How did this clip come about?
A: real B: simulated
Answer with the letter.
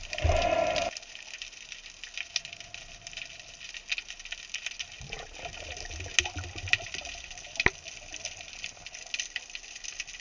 A